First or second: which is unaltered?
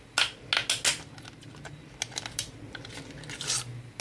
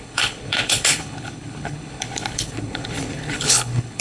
first